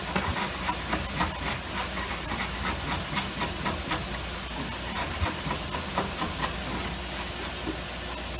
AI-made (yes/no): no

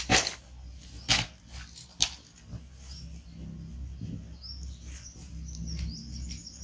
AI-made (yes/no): no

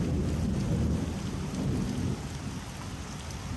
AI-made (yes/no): no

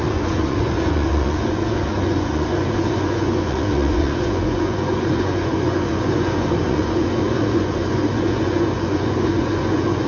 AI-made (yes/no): yes